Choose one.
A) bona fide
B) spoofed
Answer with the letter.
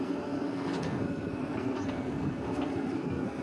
B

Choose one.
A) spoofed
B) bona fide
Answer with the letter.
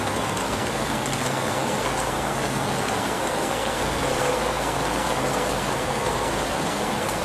A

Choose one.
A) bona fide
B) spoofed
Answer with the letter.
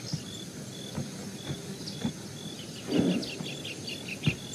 A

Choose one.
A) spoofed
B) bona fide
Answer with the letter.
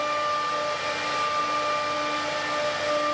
B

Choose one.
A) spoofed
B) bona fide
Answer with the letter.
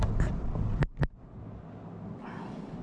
B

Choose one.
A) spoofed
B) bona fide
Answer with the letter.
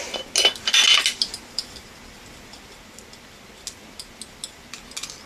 B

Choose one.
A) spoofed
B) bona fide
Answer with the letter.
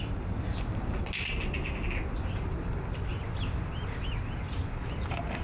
B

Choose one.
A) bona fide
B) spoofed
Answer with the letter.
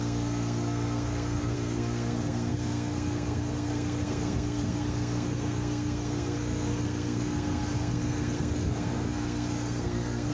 B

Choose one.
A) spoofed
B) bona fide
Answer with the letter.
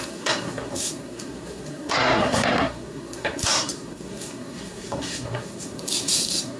A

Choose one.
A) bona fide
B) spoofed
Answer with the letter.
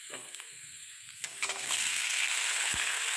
B